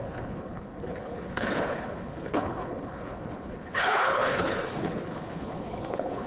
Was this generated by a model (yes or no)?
yes